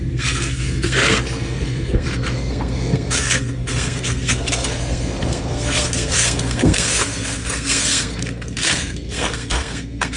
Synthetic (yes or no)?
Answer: yes